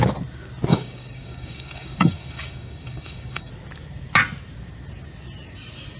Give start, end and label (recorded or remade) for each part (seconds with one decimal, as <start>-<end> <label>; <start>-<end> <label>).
0.0-0.7 recorded; 0.7-3.5 remade; 3.5-6.0 recorded